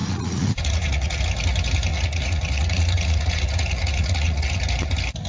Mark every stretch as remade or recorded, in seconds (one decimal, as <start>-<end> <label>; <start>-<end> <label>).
0.0-1.2 remade; 1.2-1.9 recorded; 1.9-4.6 remade; 4.6-5.3 recorded